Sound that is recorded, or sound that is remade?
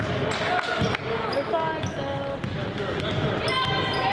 recorded